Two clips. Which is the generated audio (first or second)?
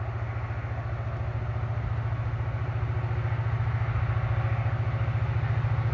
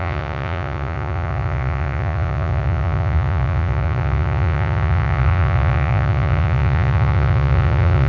second